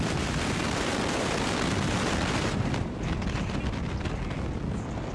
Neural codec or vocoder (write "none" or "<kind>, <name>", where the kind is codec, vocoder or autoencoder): none